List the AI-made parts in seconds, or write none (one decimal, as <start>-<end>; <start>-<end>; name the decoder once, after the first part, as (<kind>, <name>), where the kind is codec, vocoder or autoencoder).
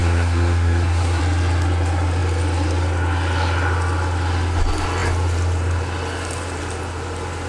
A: 0.0-1.2 (codec, SNAC)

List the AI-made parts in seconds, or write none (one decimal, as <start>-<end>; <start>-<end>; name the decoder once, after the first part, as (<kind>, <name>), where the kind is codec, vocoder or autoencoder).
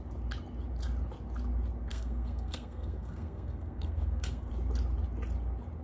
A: 1.9-4.5 (codec, SNAC)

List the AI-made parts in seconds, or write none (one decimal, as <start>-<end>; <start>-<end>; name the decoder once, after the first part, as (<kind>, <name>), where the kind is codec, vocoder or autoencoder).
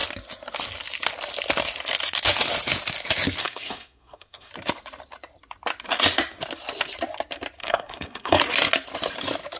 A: 3.4-4.5 (codec, SNAC); 7.6-8.4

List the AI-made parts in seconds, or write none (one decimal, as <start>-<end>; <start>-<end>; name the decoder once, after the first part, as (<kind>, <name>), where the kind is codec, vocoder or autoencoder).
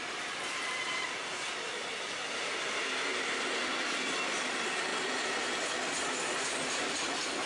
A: none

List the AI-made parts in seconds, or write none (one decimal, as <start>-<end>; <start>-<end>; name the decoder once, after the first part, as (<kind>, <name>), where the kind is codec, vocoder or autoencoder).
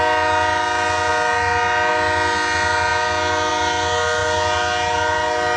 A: none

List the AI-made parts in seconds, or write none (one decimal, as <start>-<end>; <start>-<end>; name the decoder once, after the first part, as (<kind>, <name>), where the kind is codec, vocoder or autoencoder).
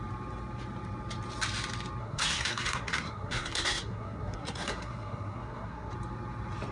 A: 2.0-5.9 (codec, SNAC)